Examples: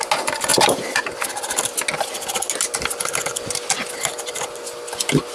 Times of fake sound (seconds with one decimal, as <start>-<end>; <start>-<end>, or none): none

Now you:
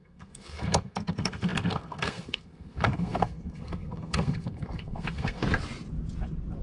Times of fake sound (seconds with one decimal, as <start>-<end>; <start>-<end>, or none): 0.0-5.4

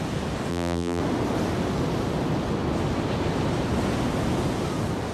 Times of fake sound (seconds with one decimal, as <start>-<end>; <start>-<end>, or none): 0.5-1.0

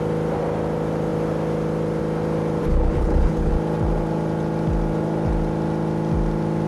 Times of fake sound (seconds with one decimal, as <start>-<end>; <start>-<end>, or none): 2.6-3.5

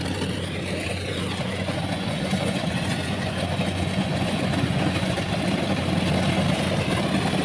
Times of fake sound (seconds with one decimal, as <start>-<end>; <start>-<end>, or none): 0.9-5.3